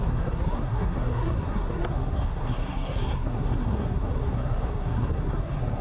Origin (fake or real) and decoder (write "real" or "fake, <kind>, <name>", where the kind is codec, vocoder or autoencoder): fake, codec, SNAC